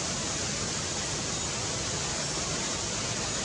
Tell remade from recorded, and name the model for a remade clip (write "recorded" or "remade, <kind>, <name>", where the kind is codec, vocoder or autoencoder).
recorded